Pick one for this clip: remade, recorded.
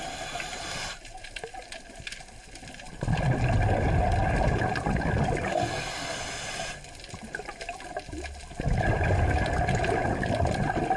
recorded